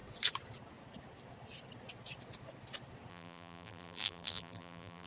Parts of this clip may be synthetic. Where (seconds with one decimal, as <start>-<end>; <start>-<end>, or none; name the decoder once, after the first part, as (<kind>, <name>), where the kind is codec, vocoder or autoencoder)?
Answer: 3.1-5.1 (vocoder, BigVGAN v2)